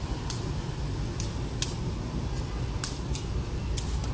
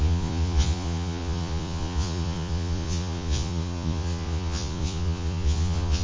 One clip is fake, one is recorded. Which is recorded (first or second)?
first